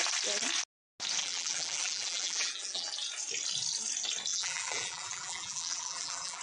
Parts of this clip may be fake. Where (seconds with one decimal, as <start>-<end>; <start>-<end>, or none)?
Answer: 1.2-2.9; 4.3-6.4